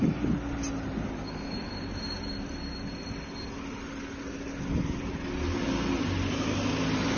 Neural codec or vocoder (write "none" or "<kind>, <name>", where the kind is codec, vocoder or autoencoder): none